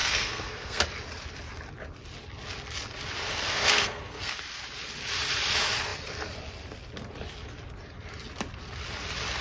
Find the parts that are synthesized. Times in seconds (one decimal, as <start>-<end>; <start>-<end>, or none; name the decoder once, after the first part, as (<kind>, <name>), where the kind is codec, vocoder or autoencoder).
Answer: 0.0-0.8 (codec, SNAC); 3.3-4.4